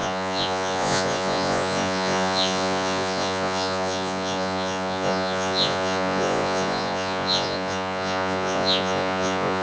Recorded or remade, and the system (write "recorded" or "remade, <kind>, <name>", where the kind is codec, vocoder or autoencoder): remade, vocoder, Vocos